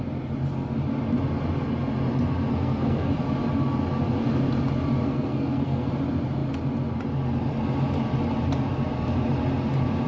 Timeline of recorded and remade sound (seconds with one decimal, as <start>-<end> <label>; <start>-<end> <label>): 0.0-2.5 recorded; 2.5-3.1 remade; 3.1-5.0 recorded; 5.0-5.9 remade; 5.9-10.1 recorded